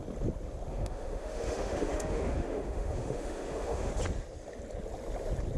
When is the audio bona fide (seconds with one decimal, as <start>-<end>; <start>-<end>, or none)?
0.0-0.7; 3.9-5.6